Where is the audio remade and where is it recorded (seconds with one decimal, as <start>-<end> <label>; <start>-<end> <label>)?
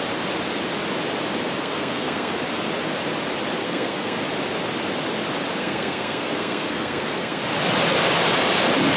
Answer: 0.0-1.6 recorded; 1.6-2.3 remade; 2.3-3.6 recorded; 3.6-4.2 remade; 4.2-5.6 recorded; 5.6-7.4 remade; 7.4-9.0 recorded